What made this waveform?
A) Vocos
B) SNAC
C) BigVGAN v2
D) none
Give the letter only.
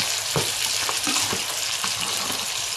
D